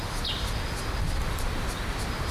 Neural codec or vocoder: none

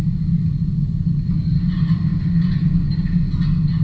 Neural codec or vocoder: none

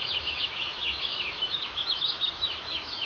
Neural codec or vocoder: autoencoder, DAC-VAE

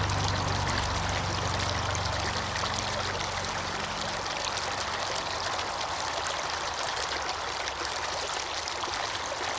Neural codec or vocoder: none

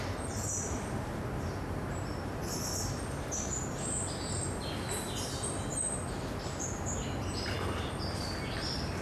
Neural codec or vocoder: none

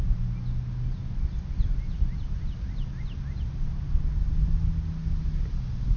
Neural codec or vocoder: none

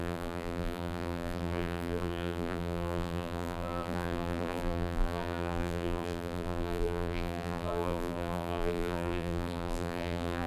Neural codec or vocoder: vocoder, BigVGAN v2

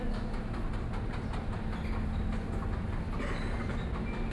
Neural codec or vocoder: none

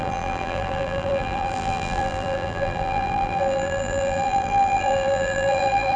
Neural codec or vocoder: vocoder, BigVGAN v2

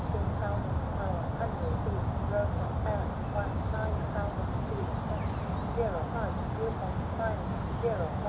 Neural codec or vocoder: none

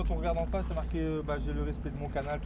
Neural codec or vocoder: none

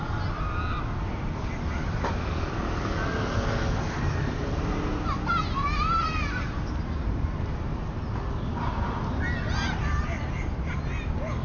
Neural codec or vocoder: none